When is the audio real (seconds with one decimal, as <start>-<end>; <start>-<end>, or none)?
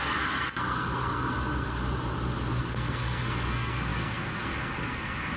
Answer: 1.8-2.6